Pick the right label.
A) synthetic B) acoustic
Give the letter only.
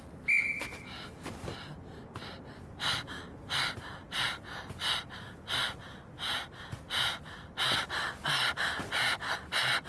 B